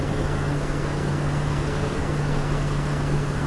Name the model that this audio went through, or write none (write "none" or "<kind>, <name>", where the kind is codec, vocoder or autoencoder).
codec, SNAC